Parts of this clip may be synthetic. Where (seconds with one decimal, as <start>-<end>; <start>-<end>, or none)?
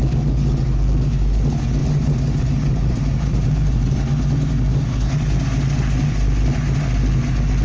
1.8-4.0